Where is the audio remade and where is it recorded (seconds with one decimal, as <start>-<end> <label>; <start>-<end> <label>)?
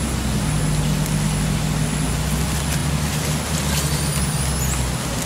0.0-5.3 recorded